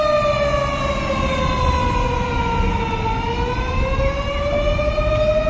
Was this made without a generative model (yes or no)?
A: yes